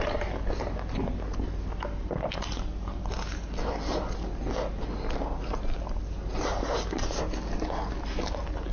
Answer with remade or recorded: recorded